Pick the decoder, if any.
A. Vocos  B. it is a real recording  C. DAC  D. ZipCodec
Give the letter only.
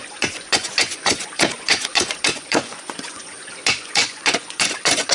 A